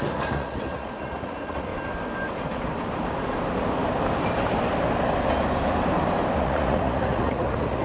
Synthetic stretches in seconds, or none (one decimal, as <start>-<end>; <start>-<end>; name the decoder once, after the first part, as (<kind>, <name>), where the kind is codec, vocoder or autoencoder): 0.0-1.7 (vocoder, Vocos); 6.4-7.8